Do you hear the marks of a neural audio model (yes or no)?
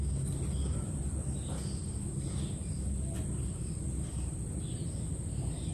no